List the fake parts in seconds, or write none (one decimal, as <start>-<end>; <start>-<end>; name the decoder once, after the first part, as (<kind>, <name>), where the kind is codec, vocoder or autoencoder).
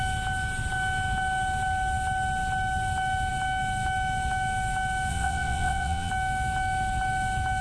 5.1-6.1 (vocoder, WaveNeXt)